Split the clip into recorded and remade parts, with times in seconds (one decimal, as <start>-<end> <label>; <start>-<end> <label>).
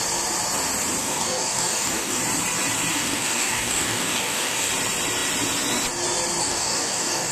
0.0-1.0 recorded; 1.0-2.2 remade; 2.2-2.9 recorded; 2.9-4.7 remade; 4.7-6.4 recorded; 6.4-7.3 remade